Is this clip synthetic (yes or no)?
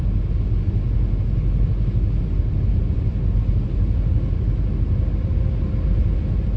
no